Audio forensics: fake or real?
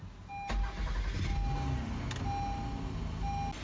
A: real